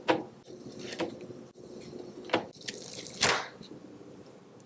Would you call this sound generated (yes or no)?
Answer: no